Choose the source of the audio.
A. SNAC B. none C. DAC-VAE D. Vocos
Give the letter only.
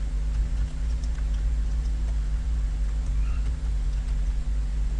D